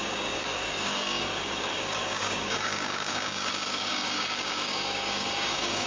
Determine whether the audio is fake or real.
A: fake